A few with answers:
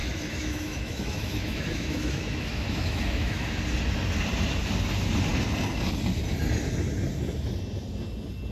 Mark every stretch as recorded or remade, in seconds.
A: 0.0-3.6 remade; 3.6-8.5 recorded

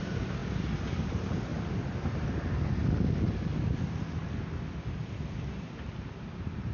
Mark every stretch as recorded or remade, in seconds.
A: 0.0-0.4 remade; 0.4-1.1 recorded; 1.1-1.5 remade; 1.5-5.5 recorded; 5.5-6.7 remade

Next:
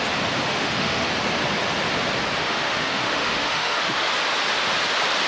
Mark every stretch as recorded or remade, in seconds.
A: 0.0-0.5 recorded; 0.5-1.1 remade; 1.1-2.4 recorded; 2.4-4.1 remade; 4.1-5.3 recorded

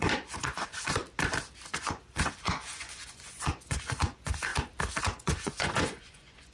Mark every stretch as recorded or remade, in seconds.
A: 0.0-1.0 remade; 1.0-1.7 recorded; 1.7-4.5 remade; 4.5-5.0 recorded; 5.0-6.5 remade

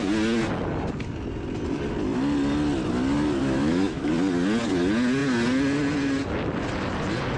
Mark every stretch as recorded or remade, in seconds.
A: 0.0-3.4 recorded; 3.4-4.1 remade; 4.1-7.4 recorded

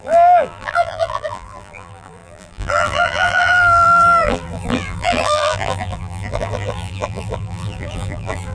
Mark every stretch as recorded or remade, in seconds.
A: 0.0-8.5 remade